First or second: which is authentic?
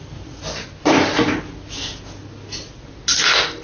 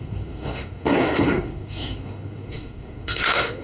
first